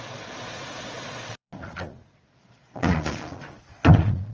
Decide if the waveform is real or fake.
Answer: fake